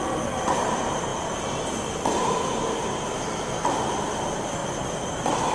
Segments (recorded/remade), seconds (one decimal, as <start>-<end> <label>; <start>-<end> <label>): 0.0-5.5 remade